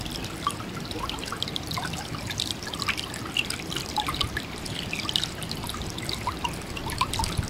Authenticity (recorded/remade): recorded